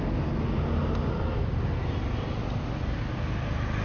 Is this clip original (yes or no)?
yes